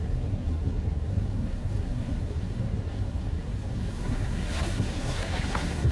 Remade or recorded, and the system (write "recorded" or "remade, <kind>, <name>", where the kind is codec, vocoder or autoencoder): remade, codec, SNAC